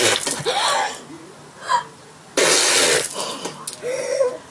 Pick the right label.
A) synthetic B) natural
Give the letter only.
B